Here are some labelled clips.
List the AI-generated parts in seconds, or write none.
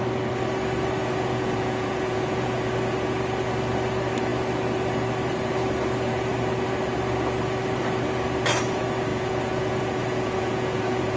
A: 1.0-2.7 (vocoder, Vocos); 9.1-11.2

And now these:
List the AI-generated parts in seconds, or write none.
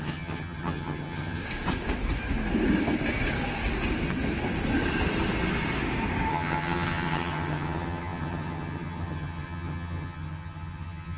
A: 0.0-1.4 (vocoder, HiFi-GAN); 6.3-11.2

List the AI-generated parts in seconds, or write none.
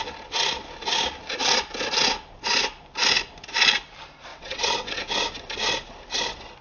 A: 4.3-5.0 (vocoder, WaveNeXt)